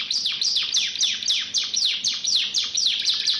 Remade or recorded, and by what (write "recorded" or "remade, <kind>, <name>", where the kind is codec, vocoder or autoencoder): remade, vocoder, BigVGAN v2